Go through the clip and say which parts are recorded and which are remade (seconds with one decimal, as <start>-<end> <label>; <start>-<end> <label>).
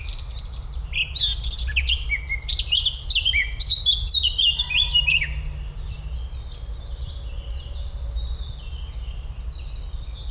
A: 0.0-10.3 recorded